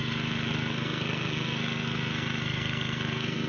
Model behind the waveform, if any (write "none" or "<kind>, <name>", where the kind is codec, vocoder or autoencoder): codec, SNAC